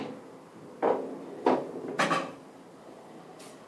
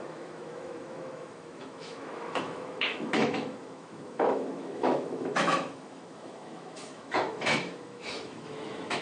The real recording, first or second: first